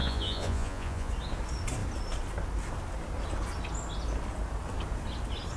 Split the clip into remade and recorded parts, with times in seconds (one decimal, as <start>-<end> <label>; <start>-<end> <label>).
0.0-1.1 remade; 1.1-5.6 recorded